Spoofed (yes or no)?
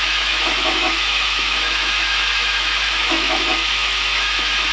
yes